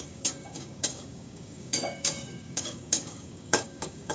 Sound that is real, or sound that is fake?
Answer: fake